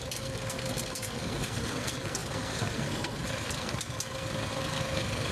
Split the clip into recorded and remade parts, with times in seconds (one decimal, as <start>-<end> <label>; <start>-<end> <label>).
0.0-5.3 remade